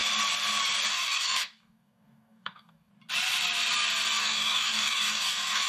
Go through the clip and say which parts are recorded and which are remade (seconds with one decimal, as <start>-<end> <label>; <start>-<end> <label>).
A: 0.0-0.9 recorded; 0.9-2.9 remade; 2.9-4.2 recorded; 4.2-5.7 remade